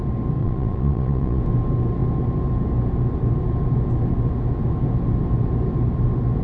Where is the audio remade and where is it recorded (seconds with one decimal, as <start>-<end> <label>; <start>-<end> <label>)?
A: 0.0-0.4 recorded; 0.4-1.4 remade; 1.4-6.4 recorded